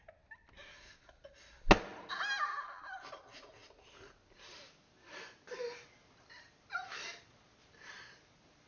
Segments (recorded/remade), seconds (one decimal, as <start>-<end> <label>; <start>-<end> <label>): 0.0-8.7 recorded